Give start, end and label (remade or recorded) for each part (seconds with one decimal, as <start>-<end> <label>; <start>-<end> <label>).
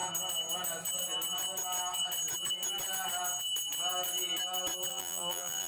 0.0-4.9 recorded; 4.9-5.7 remade